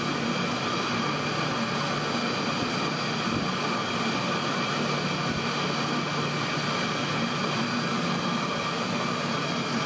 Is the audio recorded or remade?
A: recorded